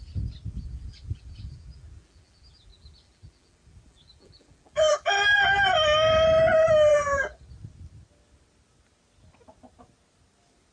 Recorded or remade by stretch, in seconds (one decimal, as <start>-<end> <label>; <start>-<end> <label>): 0.0-0.5 recorded; 0.5-5.1 remade; 5.1-6.9 recorded; 6.9-7.5 remade; 7.5-10.7 recorded